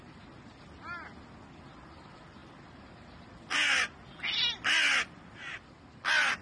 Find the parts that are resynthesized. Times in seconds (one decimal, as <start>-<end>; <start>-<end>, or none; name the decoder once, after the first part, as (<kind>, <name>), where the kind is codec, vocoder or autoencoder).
none